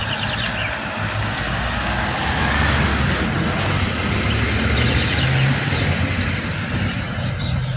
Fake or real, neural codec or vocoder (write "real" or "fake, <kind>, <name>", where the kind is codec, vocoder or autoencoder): real